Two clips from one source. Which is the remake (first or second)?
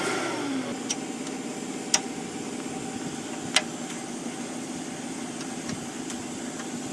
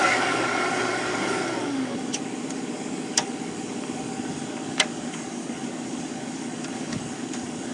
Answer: second